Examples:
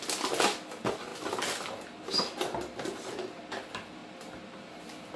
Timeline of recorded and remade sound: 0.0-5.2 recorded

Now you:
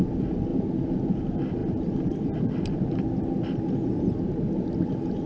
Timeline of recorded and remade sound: 0.0-5.3 recorded

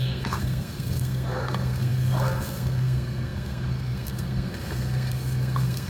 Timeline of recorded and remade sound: 0.0-5.9 remade

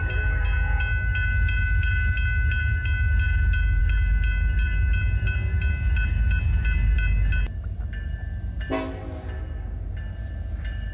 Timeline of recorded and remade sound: 0.0-10.9 recorded

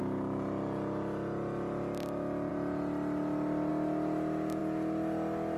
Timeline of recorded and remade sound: 0.0-5.6 recorded

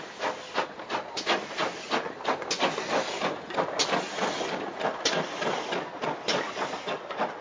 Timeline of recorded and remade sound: 0.0-7.4 recorded